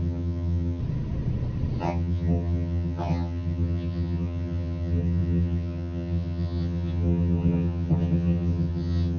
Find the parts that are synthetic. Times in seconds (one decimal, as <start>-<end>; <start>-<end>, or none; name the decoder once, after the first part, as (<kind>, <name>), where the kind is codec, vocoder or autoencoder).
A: 0.0-0.8 (vocoder, HiFi-GAN); 1.8-9.2